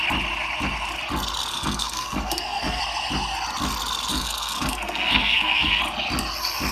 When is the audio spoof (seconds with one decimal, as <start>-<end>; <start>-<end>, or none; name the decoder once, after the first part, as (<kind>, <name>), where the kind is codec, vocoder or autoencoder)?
1.5-2.8 (codec, SNAC); 4.1-5.8